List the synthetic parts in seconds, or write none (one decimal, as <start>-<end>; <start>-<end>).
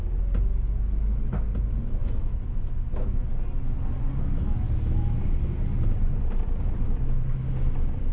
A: none